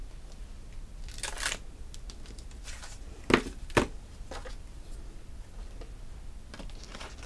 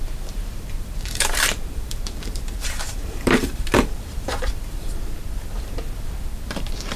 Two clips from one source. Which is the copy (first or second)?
second